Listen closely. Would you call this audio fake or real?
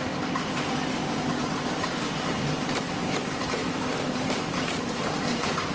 fake